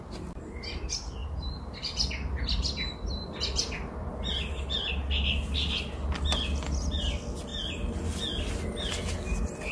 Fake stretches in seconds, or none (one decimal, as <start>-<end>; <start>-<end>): none